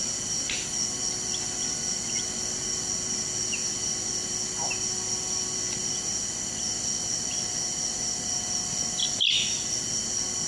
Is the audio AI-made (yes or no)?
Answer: no